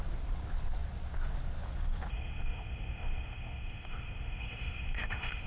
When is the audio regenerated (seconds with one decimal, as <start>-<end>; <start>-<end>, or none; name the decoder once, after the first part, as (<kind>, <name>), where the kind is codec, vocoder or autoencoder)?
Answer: 2.1-5.5 (codec, SNAC)